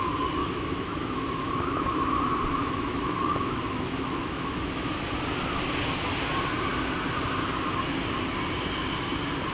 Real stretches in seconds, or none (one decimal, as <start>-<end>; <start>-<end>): 0.0-0.4; 1.8-2.6; 4.9-9.5